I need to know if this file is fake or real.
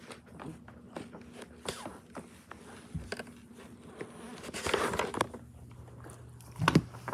real